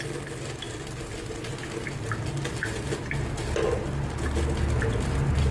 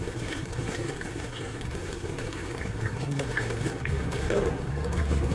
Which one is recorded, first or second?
first